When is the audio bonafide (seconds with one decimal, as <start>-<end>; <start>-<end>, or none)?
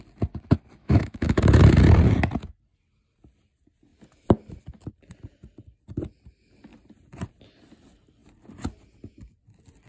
0.0-0.8; 1.6-9.9